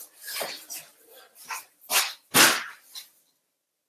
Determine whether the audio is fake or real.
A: real